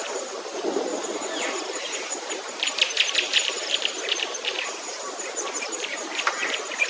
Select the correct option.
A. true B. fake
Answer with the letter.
B